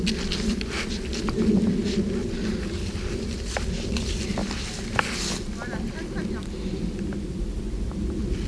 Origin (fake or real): real